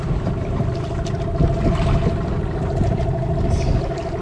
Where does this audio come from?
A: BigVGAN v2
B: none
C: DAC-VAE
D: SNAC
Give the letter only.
B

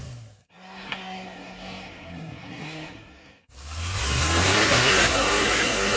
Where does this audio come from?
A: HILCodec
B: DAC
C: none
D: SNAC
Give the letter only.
D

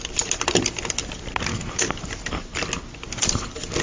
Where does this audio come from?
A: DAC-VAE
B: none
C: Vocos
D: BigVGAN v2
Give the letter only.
B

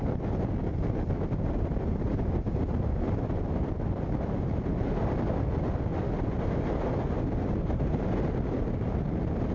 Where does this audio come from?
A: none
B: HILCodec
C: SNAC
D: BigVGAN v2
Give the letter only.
A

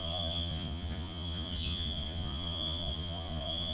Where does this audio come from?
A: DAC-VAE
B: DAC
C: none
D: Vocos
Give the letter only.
D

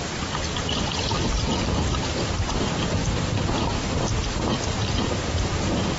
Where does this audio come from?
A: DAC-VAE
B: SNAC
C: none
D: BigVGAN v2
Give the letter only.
C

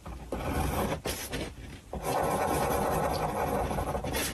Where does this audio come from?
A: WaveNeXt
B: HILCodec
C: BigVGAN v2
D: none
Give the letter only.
D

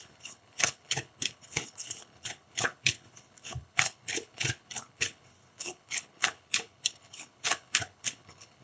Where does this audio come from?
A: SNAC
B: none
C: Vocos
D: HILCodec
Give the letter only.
D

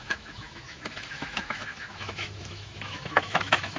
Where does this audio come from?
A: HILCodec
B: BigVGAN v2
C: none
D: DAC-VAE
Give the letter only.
D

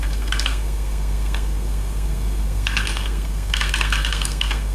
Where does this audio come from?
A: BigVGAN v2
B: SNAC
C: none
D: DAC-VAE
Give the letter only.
B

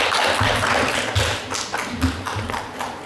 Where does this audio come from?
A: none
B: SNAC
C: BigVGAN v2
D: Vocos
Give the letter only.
A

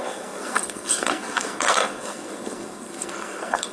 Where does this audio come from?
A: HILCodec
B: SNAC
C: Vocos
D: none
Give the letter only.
B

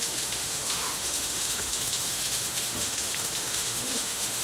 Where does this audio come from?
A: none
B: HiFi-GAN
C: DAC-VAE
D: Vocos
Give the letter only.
C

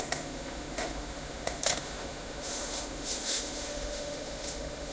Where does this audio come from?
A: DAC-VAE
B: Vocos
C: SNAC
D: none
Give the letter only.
A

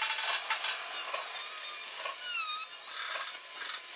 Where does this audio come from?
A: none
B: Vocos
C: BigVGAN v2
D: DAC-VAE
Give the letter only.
A